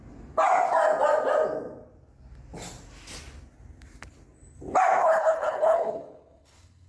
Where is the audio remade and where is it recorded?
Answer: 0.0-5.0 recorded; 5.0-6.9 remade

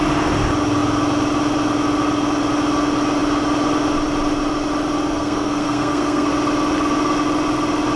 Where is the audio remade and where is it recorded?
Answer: 0.0-5.1 recorded; 5.1-6.3 remade; 6.3-8.0 recorded

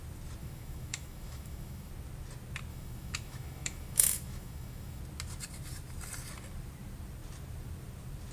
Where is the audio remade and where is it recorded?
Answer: 0.0-0.4 recorded; 0.4-1.9 remade; 1.9-2.7 recorded; 2.7-5.0 remade; 5.0-8.3 recorded

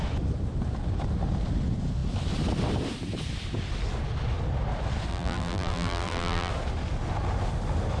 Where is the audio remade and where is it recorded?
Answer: 0.0-5.1 recorded; 5.1-6.5 remade; 6.5-8.0 recorded

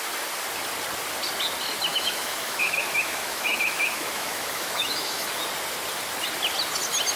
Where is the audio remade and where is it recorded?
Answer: 0.0-1.9 recorded; 1.9-5.3 remade; 5.3-7.2 recorded

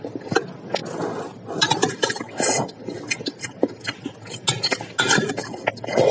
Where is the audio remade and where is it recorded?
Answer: 0.0-6.1 recorded

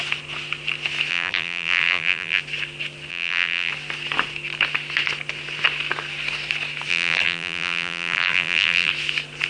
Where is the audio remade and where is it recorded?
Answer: 0.0-1.1 recorded; 1.1-2.4 remade; 2.4-3.1 recorded; 3.1-3.7 remade; 3.7-6.9 recorded; 6.9-8.9 remade; 8.9-9.5 recorded